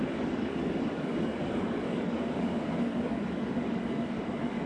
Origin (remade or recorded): remade